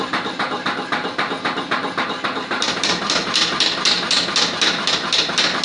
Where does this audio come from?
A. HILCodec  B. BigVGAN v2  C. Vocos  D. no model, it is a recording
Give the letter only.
D